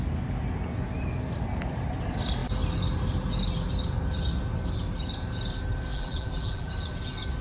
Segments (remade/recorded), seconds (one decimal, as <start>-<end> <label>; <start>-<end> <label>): 0.0-5.9 recorded; 5.9-6.7 remade; 6.7-7.4 recorded